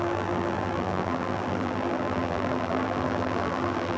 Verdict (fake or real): fake